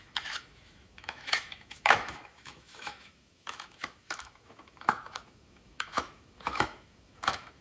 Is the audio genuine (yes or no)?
no